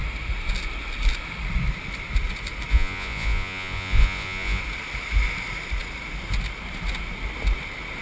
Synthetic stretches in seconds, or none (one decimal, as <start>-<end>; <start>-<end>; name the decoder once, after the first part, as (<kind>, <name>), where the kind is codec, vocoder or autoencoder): 2.7-4.6 (vocoder, Vocos)